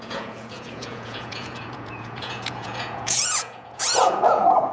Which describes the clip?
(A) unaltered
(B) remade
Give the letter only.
B